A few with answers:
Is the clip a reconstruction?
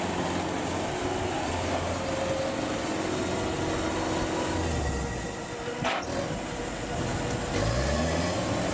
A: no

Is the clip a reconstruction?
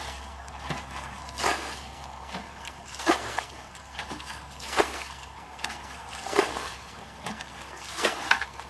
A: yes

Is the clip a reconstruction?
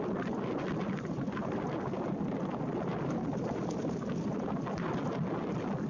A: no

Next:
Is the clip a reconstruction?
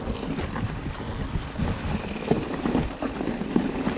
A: no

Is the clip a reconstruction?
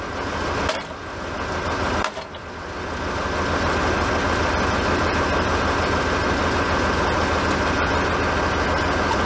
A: no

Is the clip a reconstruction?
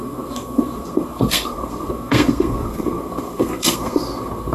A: yes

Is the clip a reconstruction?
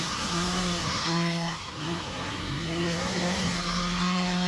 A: yes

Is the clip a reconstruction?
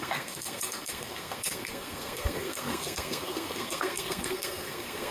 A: yes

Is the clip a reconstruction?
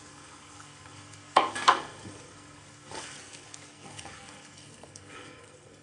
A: yes